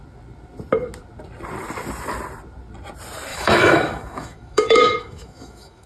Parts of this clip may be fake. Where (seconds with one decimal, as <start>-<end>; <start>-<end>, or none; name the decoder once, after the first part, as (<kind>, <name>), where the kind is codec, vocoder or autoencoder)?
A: 3.3-5.9 (autoencoder, DAC-VAE)